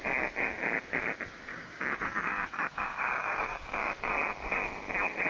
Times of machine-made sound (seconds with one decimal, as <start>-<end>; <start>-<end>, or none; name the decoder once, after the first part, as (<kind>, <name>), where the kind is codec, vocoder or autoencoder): 1.5-4.1 (codec, DAC)